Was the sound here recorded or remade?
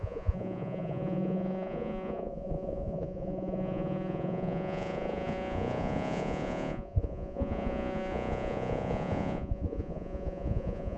remade